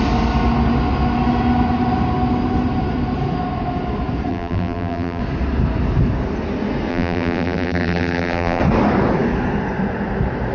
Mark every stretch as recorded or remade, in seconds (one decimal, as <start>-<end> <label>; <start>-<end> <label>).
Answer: 0.0-4.3 recorded; 4.3-5.2 remade; 5.2-6.9 recorded; 6.9-8.6 remade; 8.6-10.5 recorded